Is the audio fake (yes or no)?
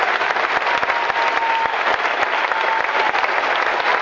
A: no